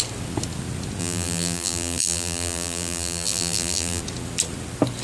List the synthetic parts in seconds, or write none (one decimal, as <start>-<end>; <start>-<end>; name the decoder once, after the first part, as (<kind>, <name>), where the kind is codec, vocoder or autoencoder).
1.0-4.0 (vocoder, BigVGAN v2)